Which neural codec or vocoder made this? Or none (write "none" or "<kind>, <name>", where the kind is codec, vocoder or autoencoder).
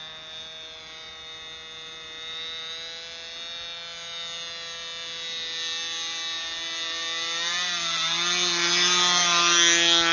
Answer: none